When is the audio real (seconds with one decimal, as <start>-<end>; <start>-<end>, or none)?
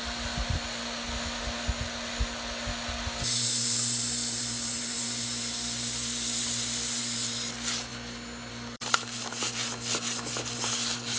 0.0-11.2